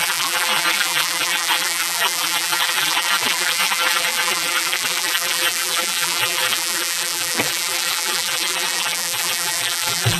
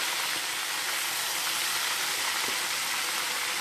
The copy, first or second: first